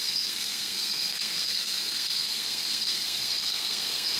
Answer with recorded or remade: remade